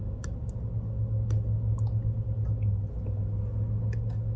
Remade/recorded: recorded